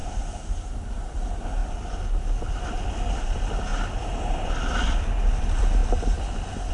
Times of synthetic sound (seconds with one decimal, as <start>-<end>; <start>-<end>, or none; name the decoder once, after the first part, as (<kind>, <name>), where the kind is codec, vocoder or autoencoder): 0.0-0.7 (vocoder, BigVGAN v2); 3.7-4.5